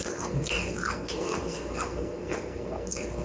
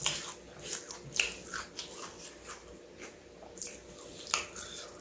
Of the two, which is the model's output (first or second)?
first